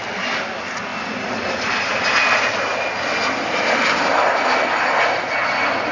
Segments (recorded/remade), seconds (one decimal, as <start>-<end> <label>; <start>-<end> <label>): 0.0-5.9 recorded